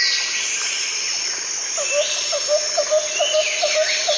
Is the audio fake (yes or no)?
no